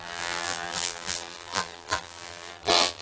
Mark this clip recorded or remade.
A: remade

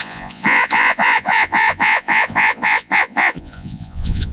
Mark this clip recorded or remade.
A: remade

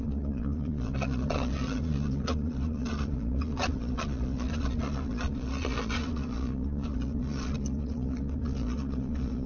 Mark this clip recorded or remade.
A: remade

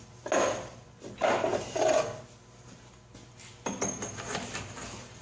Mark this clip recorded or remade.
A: recorded